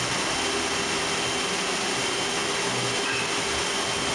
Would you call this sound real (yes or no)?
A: yes